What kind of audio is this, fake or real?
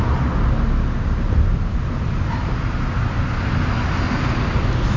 real